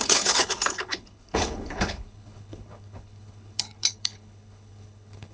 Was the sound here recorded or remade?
remade